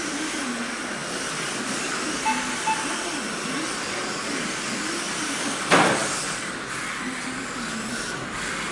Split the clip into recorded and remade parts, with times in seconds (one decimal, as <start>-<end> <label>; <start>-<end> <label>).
0.0-8.7 recorded